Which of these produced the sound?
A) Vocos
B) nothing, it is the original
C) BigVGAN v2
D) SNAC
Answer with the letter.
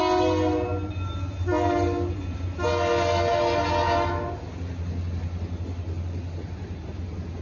B